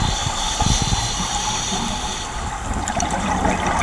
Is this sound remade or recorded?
recorded